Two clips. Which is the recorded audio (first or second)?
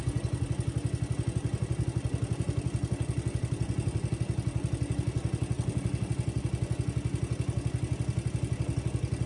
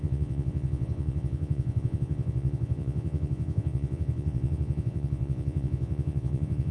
first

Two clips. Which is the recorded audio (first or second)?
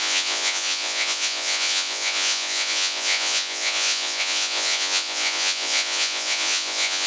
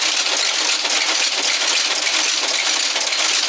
second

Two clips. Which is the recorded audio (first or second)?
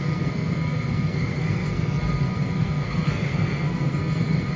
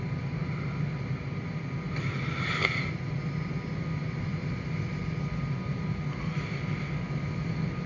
second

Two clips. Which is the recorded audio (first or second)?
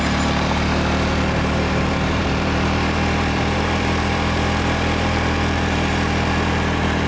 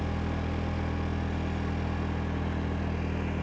second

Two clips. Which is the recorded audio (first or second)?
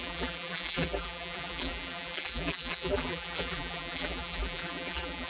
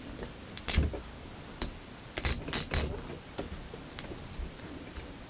second